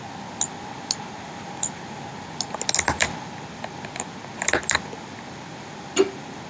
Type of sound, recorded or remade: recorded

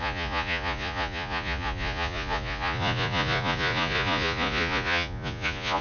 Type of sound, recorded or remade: remade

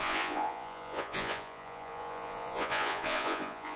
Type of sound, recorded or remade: remade